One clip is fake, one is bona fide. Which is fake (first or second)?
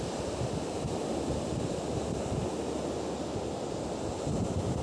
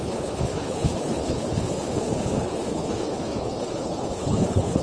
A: second